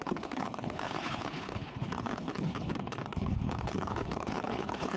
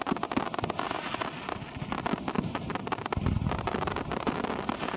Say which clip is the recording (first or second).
second